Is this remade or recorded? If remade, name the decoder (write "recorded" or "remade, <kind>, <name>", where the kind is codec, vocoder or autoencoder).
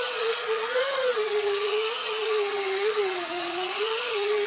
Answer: remade, vocoder, Vocos